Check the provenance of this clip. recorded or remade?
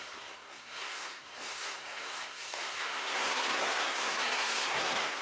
remade